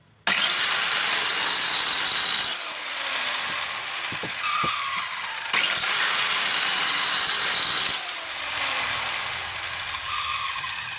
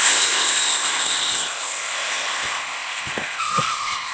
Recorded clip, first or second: first